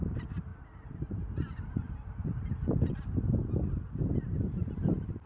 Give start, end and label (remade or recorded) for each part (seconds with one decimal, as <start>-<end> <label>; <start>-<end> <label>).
0.0-0.5 recorded; 0.5-3.7 remade; 3.7-5.3 recorded